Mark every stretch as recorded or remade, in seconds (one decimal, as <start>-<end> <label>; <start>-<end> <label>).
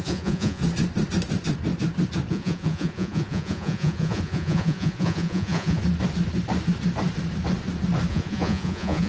0.0-0.6 remade; 0.6-2.3 recorded; 2.3-5.8 remade; 5.8-8.1 recorded; 8.1-9.1 remade